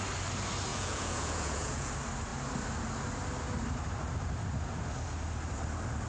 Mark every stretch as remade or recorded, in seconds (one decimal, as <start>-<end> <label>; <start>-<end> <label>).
0.0-0.7 recorded; 0.7-1.9 remade; 1.9-6.1 recorded